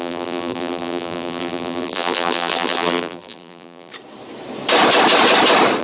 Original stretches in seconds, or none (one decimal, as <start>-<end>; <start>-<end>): 3.9-5.8